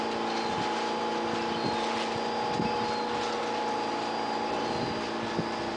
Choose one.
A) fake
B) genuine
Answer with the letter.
B